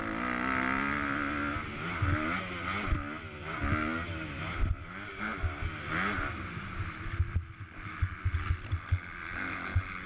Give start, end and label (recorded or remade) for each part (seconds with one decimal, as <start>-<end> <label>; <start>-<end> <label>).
0.0-10.1 recorded